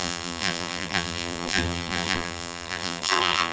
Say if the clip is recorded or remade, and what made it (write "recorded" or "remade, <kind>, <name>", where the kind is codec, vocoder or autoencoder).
remade, vocoder, BigVGAN v2